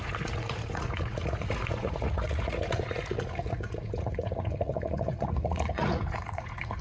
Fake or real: fake